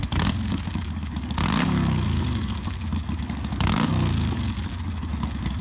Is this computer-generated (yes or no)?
yes